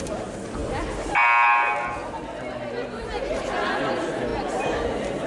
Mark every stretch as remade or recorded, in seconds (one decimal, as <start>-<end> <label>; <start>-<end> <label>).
0.0-5.3 recorded